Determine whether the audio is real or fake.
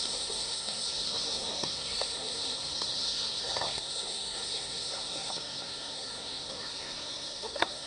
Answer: fake